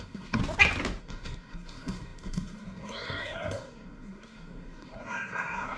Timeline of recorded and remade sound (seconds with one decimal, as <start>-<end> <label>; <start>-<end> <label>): 0.0-0.4 remade; 0.4-1.0 recorded; 1.0-5.8 remade